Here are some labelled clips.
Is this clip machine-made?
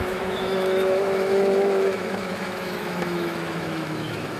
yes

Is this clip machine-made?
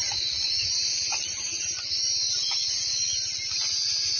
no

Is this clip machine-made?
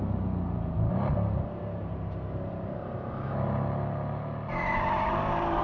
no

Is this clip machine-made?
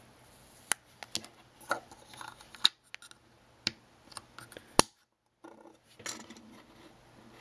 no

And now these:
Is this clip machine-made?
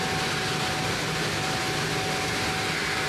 no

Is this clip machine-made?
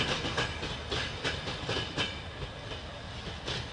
no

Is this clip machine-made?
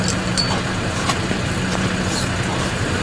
no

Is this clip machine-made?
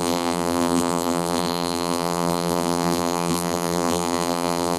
yes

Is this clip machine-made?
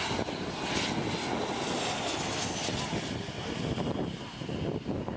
no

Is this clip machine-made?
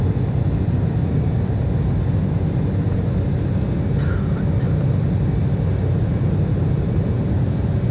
no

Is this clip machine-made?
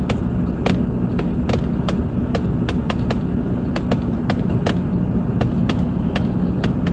no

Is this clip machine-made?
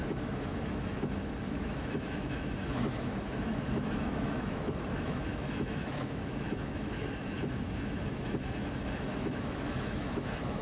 yes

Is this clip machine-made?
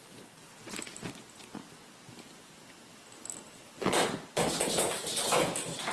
no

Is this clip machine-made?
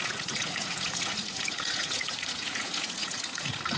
yes